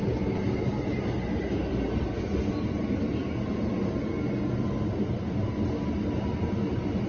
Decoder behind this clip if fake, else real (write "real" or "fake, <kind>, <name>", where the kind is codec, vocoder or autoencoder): real